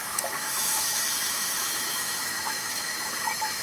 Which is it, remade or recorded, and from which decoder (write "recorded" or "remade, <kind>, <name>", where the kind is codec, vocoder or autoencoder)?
remade, autoencoder, DAC-VAE